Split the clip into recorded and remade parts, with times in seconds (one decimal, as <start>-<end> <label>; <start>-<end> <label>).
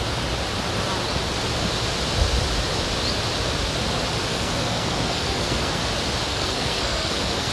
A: 0.0-4.3 recorded; 4.3-5.8 remade; 5.8-6.3 recorded; 6.3-7.5 remade